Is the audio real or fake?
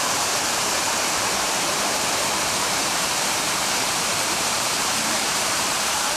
fake